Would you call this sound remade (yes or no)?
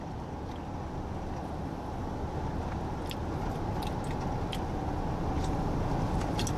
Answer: no